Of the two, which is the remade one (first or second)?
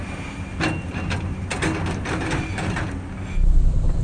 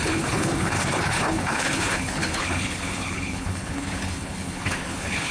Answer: second